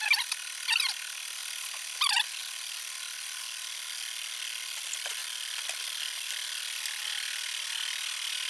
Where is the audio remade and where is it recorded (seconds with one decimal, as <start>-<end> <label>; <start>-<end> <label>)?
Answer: 0.0-8.5 recorded